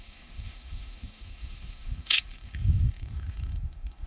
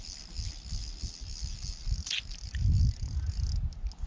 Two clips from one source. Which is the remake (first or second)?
first